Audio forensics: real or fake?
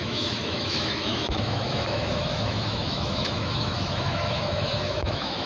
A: fake